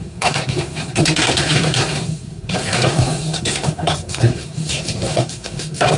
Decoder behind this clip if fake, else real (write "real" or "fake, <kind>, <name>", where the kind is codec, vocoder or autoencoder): fake, codec, SNAC